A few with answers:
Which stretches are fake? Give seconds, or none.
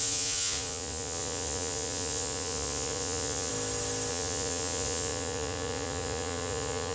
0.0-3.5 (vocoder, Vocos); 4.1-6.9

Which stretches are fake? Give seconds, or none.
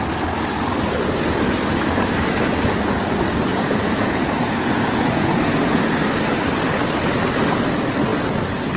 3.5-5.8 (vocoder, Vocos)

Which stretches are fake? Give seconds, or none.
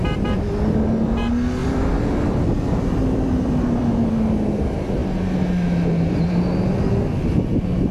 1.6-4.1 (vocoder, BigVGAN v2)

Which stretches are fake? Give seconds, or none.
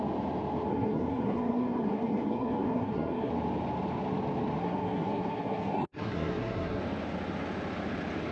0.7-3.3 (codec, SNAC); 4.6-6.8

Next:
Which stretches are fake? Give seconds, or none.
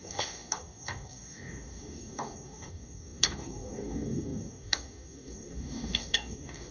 0.0-6.7 (codec, DAC)